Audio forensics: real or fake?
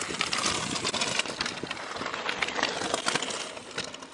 real